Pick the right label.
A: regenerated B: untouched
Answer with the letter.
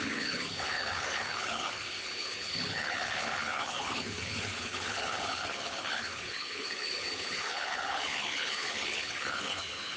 A